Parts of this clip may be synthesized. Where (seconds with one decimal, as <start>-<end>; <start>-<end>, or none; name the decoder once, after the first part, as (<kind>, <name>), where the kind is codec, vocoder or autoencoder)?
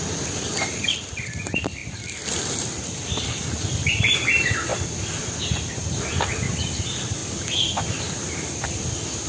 0.0-4.7 (vocoder, BigVGAN v2); 6.6-7.2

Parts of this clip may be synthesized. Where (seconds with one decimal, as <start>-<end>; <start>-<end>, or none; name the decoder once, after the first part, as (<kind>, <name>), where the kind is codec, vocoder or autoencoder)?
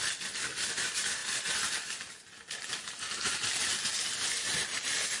none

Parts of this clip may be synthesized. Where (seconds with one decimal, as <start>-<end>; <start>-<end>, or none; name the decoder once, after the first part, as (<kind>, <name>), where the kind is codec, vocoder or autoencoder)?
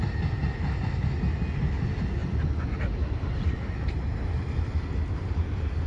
none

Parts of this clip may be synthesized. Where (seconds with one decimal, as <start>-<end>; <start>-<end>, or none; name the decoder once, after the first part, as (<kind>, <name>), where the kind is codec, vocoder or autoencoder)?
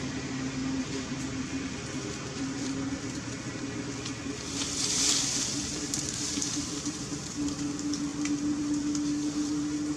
none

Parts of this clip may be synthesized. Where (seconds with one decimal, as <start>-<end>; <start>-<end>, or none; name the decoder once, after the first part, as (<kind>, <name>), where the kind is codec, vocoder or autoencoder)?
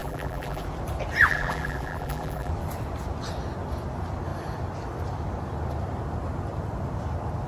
0.0-0.6 (vocoder, BigVGAN v2); 1.3-2.5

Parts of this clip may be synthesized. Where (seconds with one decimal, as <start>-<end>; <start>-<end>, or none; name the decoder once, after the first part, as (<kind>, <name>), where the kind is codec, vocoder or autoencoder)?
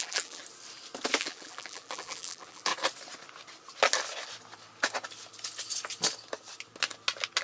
0.0-0.4 (vocoder, BigVGAN v2); 1.2-2.7